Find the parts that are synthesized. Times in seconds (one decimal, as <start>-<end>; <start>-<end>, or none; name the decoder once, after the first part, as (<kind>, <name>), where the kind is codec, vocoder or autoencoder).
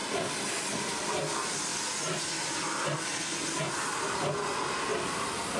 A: 0.0-1.2 (vocoder, BigVGAN v2); 4.9-5.6